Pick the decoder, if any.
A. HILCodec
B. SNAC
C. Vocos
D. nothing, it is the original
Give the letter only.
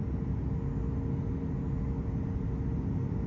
D